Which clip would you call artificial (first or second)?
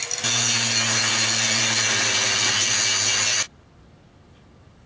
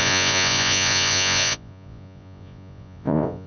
second